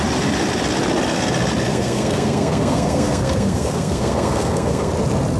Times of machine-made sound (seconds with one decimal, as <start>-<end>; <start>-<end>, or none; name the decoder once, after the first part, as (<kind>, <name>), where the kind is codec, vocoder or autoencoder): 1.7-4.9 (codec, SNAC)

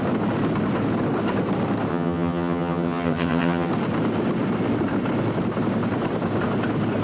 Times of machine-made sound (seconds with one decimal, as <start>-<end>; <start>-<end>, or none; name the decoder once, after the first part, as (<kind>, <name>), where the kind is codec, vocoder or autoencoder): 1.9-3.7 (vocoder, HiFi-GAN)

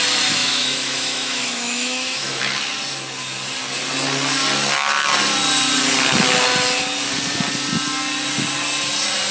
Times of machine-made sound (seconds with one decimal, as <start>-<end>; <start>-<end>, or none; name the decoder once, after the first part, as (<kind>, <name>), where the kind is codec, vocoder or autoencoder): 0.4-2.4 (autoencoder, DAC-VAE)

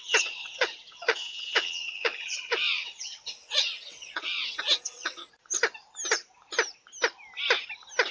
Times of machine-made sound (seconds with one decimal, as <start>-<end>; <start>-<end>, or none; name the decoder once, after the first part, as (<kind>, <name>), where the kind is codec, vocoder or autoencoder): 0.0-5.2 (vocoder, WaveNeXt)

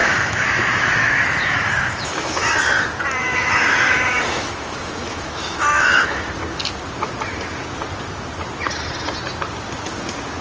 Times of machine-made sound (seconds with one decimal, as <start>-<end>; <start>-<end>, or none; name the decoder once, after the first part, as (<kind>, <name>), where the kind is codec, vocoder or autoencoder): 0.0-2.5 (autoencoder, DAC-VAE); 3.2-6.3

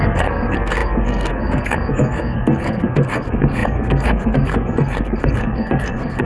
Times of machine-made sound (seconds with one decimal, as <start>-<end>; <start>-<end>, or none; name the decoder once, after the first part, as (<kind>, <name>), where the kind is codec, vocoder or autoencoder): 0.0-6.2 (codec, SNAC)

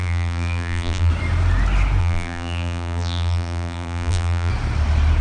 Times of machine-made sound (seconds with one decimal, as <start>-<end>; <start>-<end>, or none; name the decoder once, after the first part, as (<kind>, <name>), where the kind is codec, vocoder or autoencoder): 0.0-1.1 (vocoder, BigVGAN v2); 2.0-4.5

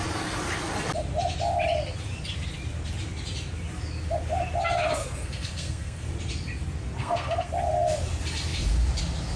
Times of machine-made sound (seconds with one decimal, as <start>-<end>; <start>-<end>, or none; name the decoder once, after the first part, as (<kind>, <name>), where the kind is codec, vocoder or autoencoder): 5.0-6.1 (codec, SNAC); 7.0-7.5